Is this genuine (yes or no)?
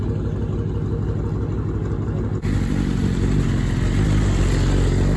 yes